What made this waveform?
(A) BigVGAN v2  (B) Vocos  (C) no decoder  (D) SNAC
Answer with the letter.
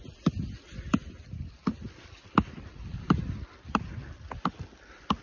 C